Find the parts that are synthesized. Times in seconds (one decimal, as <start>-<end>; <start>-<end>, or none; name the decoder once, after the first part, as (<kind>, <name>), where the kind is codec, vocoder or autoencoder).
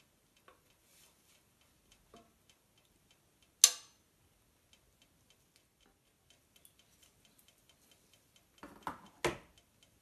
none